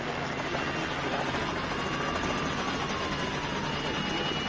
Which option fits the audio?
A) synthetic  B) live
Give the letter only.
B